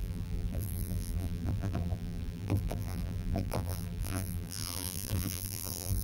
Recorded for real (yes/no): no